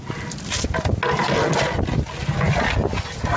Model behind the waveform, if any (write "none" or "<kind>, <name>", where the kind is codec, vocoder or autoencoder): none